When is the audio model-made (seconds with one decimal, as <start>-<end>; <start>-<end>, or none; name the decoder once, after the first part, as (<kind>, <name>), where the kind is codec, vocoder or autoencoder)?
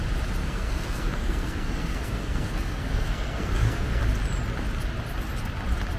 0.4-4.0 (codec, SNAC)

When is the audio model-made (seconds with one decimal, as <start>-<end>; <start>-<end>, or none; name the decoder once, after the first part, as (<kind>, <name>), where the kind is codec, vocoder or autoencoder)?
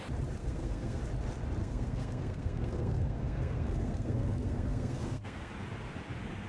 0.4-1.0 (codec, SNAC); 1.6-5.5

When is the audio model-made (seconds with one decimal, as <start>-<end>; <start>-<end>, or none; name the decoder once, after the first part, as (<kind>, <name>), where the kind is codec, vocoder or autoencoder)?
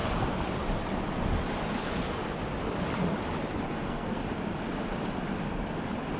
3.7-4.2 (codec, SNAC)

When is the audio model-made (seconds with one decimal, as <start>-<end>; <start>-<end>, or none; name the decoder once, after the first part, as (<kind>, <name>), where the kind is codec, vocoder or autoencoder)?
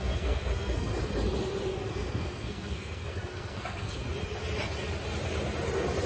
0.0-0.9 (codec, SNAC); 1.9-4.0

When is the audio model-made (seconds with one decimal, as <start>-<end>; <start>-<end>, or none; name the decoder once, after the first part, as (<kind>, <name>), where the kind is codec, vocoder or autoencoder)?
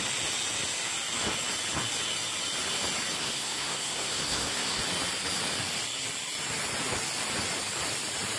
3.2-4.8 (codec, SNAC)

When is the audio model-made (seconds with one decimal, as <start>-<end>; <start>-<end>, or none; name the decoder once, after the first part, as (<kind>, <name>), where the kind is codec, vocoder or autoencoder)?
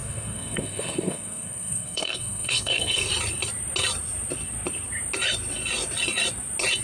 0.0-3.1 (codec, SNAC)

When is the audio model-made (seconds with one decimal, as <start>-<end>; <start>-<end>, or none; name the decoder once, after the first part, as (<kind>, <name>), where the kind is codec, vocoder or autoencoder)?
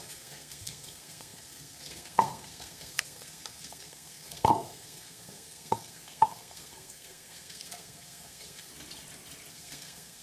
0.0-8.7 (codec, SNAC); 9.5-10.2